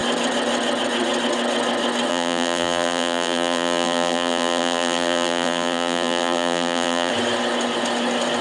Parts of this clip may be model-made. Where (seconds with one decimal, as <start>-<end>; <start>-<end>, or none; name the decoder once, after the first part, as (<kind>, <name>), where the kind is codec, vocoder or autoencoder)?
2.1-7.1 (vocoder, BigVGAN v2)